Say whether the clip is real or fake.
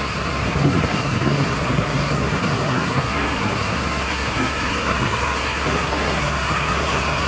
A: fake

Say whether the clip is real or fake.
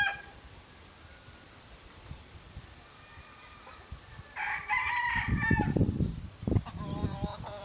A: fake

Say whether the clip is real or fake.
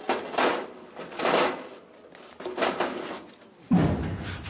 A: real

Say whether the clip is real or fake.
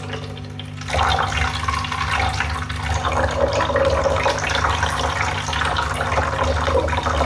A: real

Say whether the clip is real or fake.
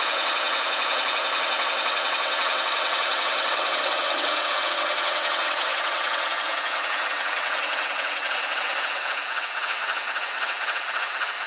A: fake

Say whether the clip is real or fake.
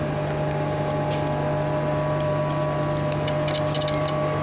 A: real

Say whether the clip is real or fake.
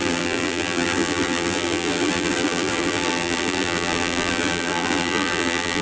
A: fake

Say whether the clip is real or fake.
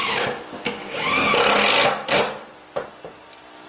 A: real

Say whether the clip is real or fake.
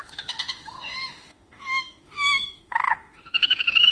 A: fake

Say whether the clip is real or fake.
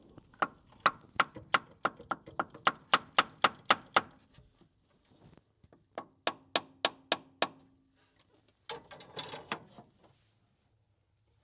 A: real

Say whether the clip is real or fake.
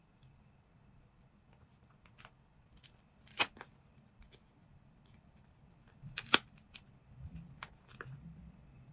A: fake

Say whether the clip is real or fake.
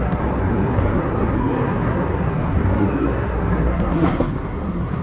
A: fake